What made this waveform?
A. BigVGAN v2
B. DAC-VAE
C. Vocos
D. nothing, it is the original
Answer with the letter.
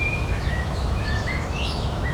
B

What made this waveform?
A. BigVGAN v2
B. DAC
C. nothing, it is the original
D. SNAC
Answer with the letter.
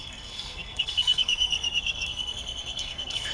D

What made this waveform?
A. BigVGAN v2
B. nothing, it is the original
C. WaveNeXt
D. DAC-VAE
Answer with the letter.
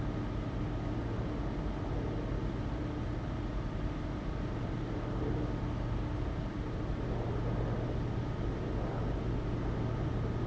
B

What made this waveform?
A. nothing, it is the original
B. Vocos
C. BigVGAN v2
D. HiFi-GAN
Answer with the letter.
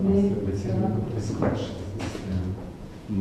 B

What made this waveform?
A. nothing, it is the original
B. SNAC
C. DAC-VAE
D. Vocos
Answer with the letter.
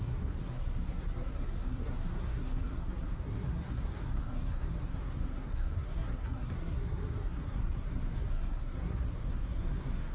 B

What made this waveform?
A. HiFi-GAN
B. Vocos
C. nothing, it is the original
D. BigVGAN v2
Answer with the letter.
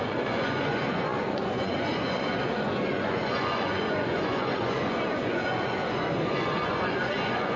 B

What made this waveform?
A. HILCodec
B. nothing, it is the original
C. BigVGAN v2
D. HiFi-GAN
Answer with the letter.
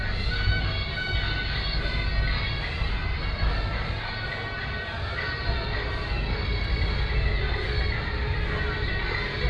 B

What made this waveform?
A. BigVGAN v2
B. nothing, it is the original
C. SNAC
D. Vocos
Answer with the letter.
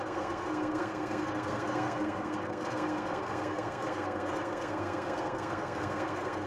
C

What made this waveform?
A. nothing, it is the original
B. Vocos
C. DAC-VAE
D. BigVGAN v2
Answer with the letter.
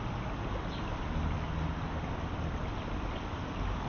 A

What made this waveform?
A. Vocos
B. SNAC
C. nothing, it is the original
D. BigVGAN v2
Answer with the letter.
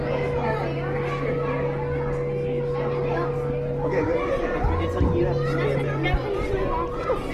C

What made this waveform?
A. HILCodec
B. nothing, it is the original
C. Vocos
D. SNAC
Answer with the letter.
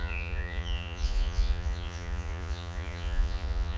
C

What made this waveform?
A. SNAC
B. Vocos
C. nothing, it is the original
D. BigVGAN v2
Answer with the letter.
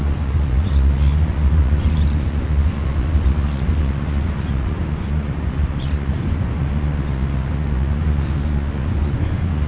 B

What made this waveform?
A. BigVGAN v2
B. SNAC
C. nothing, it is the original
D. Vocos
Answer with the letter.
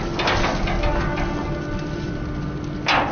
C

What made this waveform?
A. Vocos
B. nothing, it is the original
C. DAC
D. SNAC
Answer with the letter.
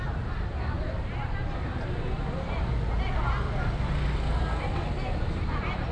B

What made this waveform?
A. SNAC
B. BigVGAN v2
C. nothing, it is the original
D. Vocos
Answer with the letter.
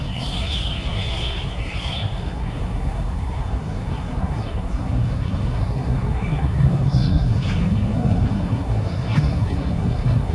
A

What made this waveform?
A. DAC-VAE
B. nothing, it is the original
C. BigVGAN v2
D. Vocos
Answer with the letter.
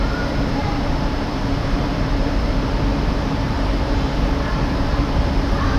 C